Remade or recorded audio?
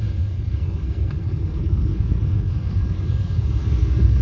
remade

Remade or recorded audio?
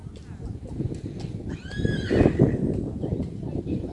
recorded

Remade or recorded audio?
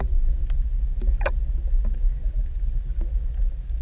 recorded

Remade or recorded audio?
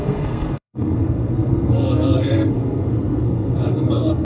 remade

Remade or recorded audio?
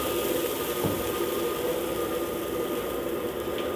recorded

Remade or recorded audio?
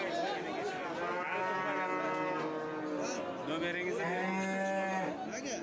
recorded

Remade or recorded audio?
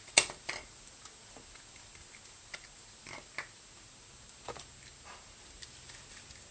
recorded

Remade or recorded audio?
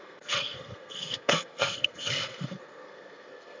remade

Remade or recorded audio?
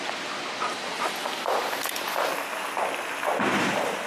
recorded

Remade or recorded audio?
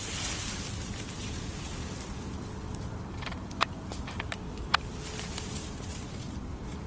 recorded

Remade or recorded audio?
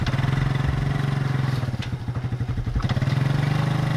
recorded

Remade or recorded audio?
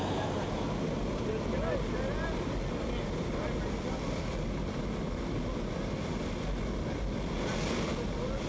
recorded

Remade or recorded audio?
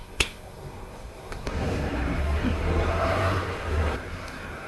remade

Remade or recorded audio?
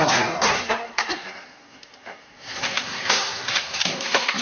remade